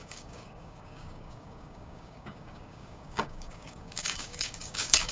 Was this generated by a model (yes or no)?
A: yes